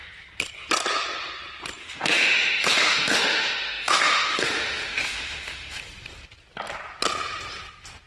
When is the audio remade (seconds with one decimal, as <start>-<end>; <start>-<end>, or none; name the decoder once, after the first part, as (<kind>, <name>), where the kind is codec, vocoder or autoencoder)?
1.8-5.8 (autoencoder, DAC-VAE)